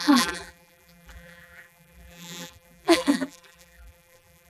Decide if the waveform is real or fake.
fake